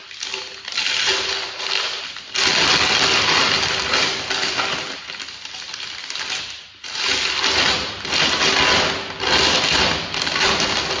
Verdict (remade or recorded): recorded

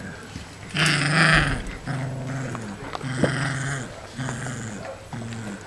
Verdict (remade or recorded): recorded